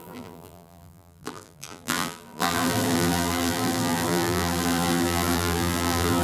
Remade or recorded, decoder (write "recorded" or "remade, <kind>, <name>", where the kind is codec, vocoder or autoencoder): remade, vocoder, BigVGAN v2